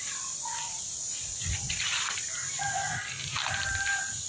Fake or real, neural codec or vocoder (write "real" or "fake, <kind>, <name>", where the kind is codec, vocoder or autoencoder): real